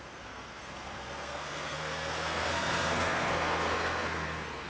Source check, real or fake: fake